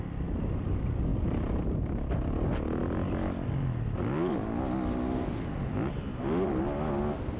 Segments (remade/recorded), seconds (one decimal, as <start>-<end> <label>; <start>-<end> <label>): 0.0-7.4 recorded